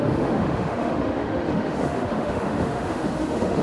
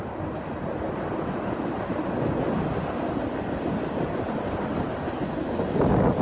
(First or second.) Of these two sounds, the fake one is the first